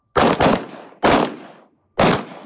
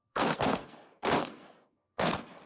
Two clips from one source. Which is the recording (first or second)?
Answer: first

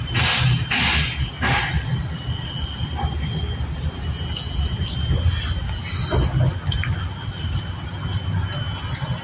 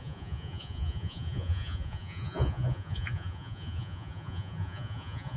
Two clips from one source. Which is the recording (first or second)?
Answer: first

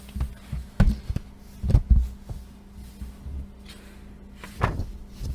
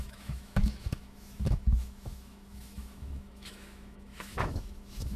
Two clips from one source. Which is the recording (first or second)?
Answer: first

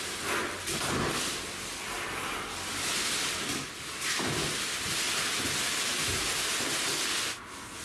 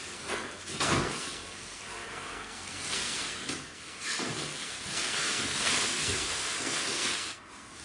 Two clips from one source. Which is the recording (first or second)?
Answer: first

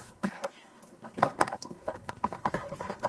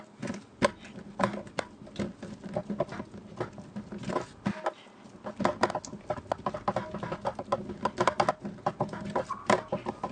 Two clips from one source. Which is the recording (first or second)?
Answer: second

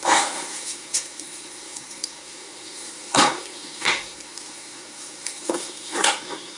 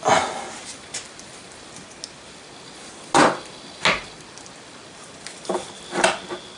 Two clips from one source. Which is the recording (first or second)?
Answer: second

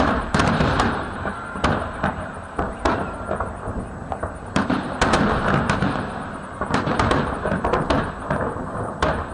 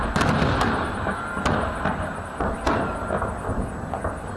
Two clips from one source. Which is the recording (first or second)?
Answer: second